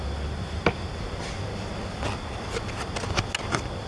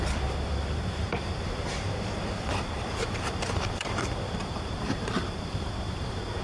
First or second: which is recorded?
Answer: first